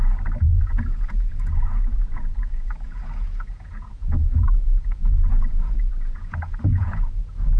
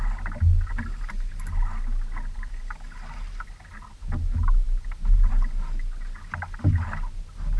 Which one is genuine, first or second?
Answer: second